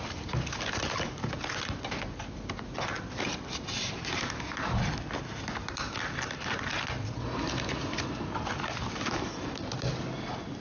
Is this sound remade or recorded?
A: recorded